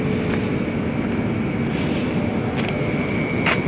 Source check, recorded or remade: recorded